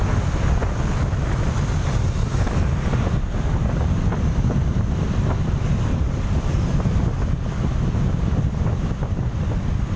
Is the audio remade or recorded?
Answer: recorded